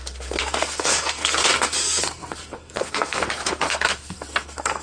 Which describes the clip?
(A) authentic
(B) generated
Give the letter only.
B